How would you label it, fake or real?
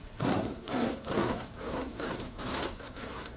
fake